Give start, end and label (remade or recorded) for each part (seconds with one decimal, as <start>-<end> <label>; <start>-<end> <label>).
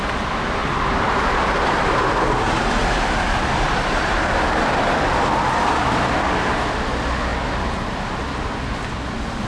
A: 0.0-9.5 recorded